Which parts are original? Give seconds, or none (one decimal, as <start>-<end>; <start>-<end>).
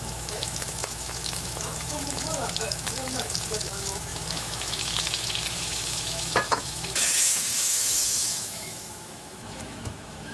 none